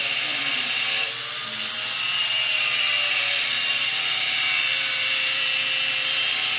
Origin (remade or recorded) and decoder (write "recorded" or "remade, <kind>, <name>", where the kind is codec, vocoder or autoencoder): remade, vocoder, BigVGAN v2